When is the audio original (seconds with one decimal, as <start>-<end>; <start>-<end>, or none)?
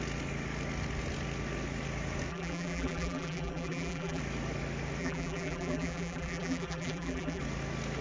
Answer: 0.0-2.3; 4.2-5.0; 7.4-8.0